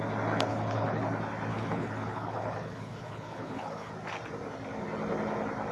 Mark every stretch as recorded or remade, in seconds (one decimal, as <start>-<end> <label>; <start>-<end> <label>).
0.0-0.5 recorded; 0.5-1.0 remade; 1.0-1.5 recorded; 1.5-3.9 remade; 3.9-5.7 recorded